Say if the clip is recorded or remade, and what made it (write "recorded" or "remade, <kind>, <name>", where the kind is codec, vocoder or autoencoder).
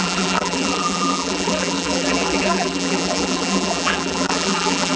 remade, vocoder, BigVGAN v2